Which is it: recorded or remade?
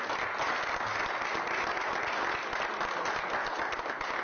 recorded